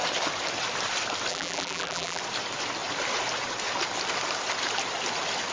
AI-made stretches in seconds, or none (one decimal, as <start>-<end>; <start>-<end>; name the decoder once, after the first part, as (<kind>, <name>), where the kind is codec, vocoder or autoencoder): 1.3-2.2 (vocoder, BigVGAN v2)